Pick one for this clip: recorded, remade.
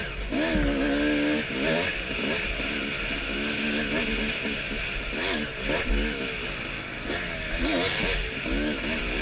recorded